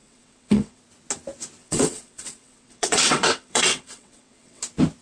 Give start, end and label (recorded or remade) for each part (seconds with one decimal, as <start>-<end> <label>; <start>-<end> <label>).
0.0-0.8 remade; 0.8-1.6 recorded; 1.6-4.6 remade; 4.6-5.0 recorded